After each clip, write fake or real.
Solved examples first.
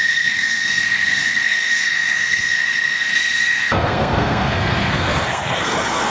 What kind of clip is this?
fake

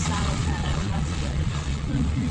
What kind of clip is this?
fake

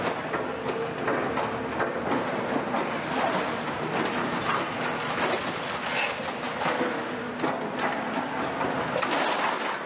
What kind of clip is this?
real